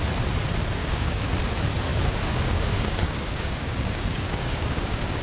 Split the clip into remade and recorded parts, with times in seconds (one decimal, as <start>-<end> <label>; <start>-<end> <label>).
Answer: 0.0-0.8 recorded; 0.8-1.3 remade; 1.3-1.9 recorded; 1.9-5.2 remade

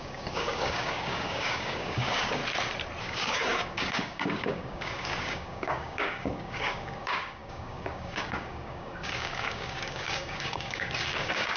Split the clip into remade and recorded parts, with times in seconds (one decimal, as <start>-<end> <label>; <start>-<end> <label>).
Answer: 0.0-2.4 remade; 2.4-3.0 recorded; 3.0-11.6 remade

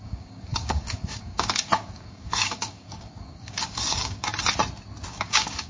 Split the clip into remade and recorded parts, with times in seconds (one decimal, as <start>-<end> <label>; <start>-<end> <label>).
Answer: 0.0-4.3 remade; 4.3-5.1 recorded; 5.1-5.7 remade

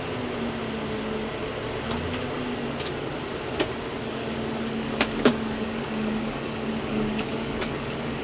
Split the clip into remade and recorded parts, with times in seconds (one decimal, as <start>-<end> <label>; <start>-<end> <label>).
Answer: 0.0-4.0 recorded; 4.0-8.2 remade

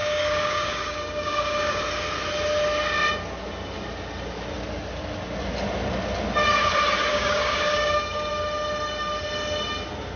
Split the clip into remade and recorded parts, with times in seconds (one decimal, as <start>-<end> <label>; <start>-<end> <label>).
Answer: 0.0-1.8 remade; 1.8-7.1 recorded; 7.1-8.3 remade; 8.3-10.2 recorded

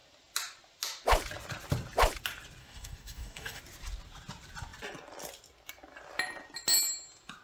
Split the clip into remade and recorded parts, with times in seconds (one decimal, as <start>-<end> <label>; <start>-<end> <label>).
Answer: 0.0-2.6 recorded; 2.6-3.6 remade; 3.6-7.4 recorded